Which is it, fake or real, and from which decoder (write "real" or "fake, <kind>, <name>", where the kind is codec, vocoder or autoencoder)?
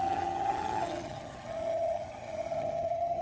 fake, vocoder, HiFi-GAN